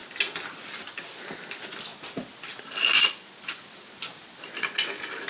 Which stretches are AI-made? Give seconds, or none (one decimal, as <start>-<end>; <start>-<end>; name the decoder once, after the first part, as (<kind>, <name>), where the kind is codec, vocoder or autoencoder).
none